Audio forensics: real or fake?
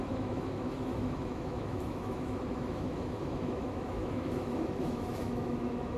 fake